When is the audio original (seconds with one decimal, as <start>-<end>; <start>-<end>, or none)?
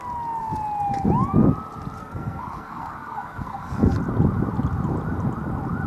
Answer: 0.0-2.0; 4.0-5.9